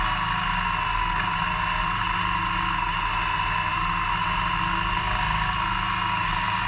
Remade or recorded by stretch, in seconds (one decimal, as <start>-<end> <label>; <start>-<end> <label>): 0.0-6.7 recorded